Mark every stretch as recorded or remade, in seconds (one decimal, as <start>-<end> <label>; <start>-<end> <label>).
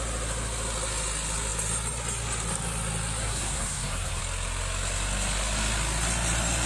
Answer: 0.0-3.2 recorded; 3.2-4.2 remade; 4.2-6.7 recorded